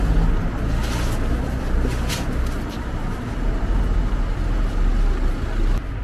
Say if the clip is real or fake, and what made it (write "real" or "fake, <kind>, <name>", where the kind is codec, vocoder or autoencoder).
real